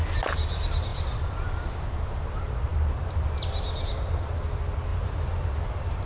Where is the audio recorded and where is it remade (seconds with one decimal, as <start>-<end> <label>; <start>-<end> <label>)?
0.0-6.0 recorded